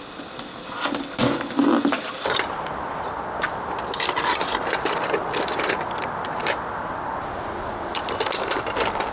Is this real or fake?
real